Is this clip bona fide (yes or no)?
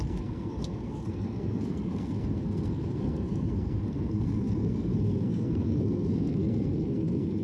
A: no